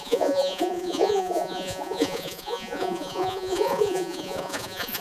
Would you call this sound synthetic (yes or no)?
yes